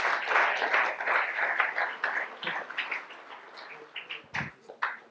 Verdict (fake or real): real